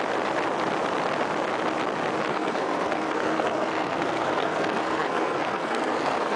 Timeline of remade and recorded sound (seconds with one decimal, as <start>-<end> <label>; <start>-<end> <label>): 0.0-2.3 recorded; 2.3-6.4 remade